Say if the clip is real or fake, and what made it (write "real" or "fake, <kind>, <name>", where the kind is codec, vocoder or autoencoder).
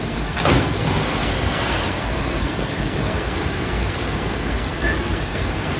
fake, codec, SNAC